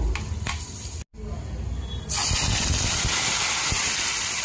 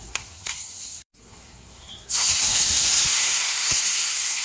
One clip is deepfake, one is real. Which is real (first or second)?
first